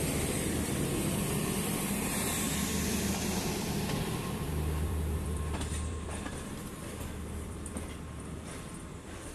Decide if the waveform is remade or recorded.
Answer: remade